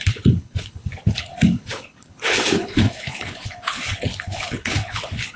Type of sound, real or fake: fake